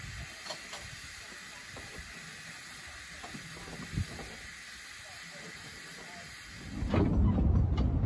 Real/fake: real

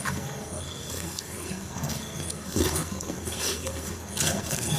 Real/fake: fake